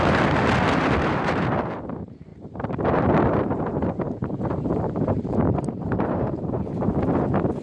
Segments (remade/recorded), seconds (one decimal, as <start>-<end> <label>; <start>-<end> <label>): 0.0-2.3 recorded; 2.3-6.9 remade; 6.9-7.6 recorded